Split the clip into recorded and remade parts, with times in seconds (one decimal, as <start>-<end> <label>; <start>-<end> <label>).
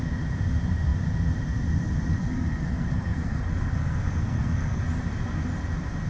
0.0-2.2 recorded; 2.2-4.8 remade; 4.8-6.1 recorded